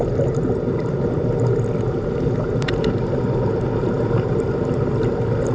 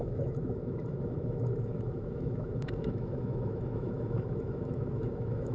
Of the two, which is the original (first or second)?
first